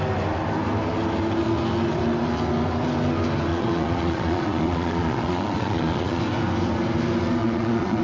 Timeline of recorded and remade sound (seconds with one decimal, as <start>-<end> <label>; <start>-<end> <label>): 0.0-3.5 recorded; 3.5-6.2 remade; 6.2-7.4 recorded; 7.4-8.0 remade